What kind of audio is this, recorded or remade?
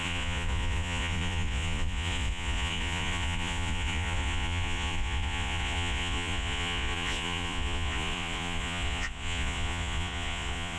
remade